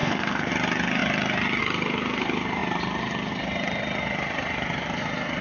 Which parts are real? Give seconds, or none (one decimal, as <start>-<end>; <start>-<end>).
0.5-5.4